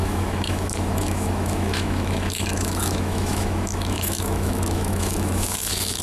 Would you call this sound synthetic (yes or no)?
yes